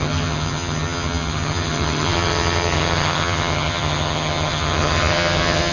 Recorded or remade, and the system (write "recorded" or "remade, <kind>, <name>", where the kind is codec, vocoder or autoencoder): remade, vocoder, HiFi-GAN